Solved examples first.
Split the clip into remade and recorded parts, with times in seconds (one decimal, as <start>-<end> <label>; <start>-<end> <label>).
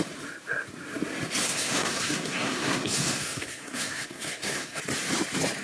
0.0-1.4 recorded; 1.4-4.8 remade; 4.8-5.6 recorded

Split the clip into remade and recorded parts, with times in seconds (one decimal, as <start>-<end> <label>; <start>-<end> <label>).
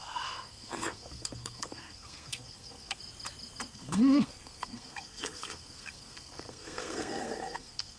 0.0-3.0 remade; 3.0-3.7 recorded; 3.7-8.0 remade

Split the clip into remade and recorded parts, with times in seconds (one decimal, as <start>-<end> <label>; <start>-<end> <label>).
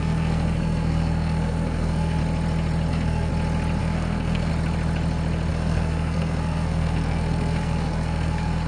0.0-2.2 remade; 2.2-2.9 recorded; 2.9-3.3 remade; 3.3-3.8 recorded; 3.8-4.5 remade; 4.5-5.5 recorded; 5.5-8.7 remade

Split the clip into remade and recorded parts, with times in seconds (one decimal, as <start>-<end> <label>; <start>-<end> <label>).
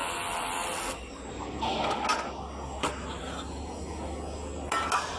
0.0-5.2 recorded